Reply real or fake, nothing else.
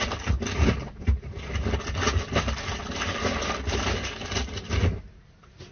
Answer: real